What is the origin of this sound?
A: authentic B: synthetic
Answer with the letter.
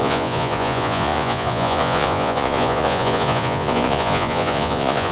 B